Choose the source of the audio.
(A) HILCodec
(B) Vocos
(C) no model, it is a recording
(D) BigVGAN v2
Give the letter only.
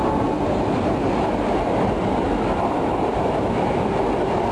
C